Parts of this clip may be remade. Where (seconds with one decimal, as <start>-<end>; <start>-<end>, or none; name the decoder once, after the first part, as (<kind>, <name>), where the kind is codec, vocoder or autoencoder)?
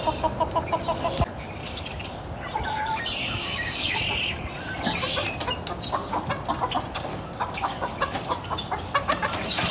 3.2-4.0 (codec, DAC); 7.1-8.0